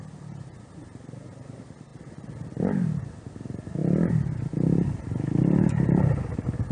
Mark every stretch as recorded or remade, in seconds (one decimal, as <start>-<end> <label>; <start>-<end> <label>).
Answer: 0.0-1.9 recorded; 1.9-3.0 remade; 3.0-3.8 recorded; 3.8-6.0 remade; 6.0-6.7 recorded